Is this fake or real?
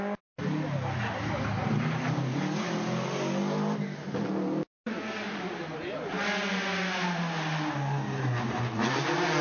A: real